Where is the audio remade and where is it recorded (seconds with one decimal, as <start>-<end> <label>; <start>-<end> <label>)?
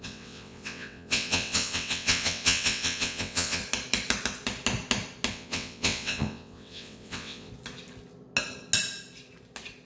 0.0-3.6 remade; 3.6-5.3 recorded; 5.3-7.5 remade; 7.5-9.9 recorded